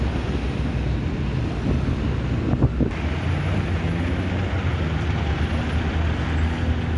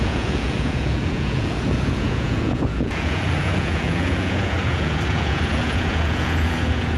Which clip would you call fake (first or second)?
second